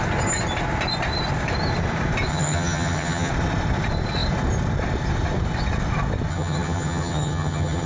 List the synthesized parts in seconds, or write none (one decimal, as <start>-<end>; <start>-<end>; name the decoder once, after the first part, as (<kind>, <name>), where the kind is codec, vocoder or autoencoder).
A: 2.3-3.3 (vocoder, HiFi-GAN); 6.3-7.9